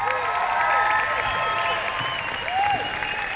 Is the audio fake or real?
real